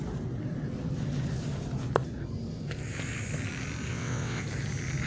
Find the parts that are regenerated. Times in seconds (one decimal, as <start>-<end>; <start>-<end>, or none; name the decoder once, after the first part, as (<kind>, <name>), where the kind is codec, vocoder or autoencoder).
3.9-4.4 (vocoder, WaveNeXt)